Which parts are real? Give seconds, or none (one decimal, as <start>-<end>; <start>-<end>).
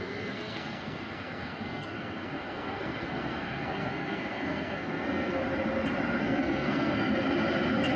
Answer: 5.4-6.2; 7.1-8.0